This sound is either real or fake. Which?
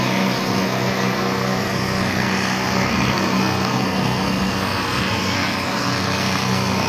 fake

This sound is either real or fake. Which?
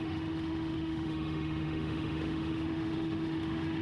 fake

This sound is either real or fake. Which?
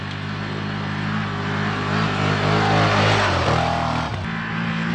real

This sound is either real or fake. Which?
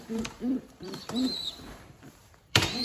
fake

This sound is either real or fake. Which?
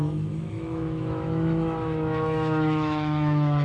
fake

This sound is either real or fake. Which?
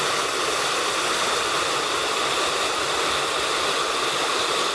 real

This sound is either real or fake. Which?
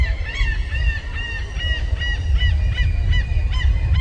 real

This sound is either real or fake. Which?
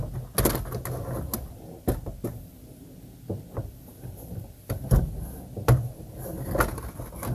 real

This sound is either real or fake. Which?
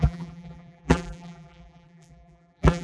fake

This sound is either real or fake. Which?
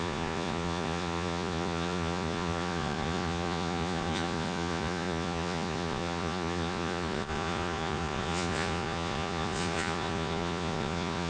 fake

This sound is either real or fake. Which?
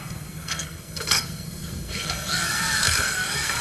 fake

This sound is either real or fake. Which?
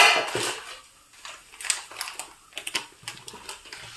real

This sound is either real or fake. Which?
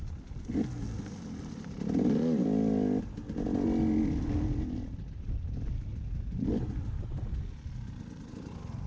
real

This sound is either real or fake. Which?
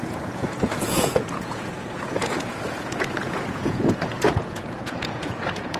fake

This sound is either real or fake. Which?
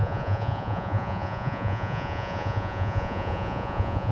fake